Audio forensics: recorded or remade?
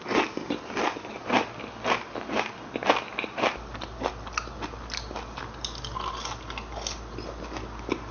recorded